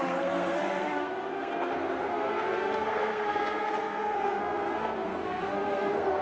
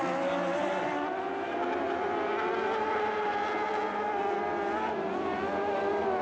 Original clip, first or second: second